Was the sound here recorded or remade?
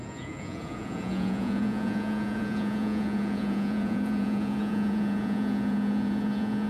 remade